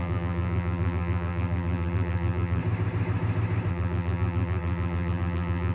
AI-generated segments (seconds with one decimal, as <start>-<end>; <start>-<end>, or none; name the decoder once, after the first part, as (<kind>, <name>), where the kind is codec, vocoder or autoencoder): 0.0-2.6 (vocoder, BigVGAN v2); 3.7-5.7